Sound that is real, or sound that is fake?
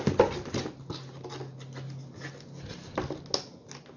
real